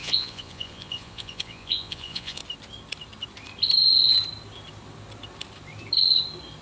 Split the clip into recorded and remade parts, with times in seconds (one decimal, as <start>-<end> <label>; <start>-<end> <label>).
0.0-2.4 remade; 2.4-6.6 recorded